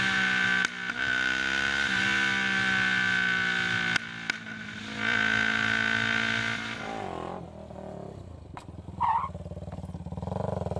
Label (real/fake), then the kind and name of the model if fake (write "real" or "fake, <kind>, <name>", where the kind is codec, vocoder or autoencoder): real